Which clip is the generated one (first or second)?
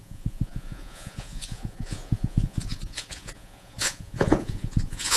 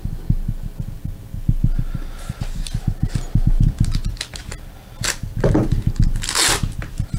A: first